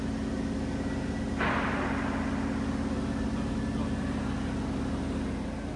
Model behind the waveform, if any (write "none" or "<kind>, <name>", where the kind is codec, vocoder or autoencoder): none